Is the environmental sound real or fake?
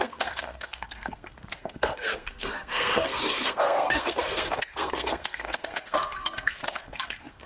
fake